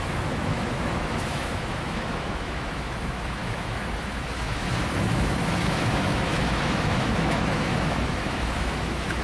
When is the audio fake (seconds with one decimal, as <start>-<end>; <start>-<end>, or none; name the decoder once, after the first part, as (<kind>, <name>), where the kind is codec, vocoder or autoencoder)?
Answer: 0.0-9.2 (autoencoder, DAC-VAE)